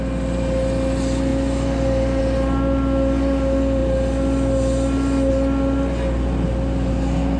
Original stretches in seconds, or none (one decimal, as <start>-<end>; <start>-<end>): 0.0-7.4